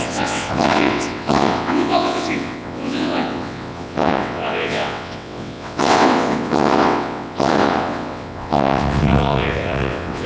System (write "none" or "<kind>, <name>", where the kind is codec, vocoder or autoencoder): vocoder, WaveNeXt